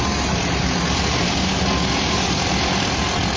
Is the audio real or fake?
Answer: real